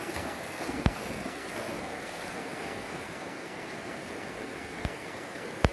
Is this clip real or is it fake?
fake